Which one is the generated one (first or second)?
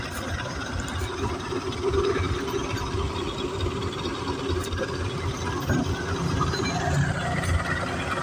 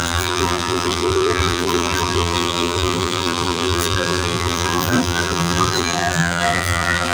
second